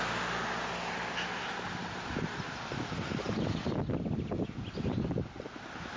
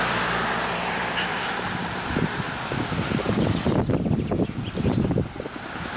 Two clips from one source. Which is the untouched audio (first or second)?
first